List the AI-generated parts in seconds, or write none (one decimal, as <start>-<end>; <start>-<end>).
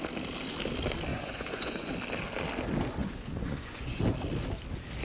1.1-1.9; 3.0-4.0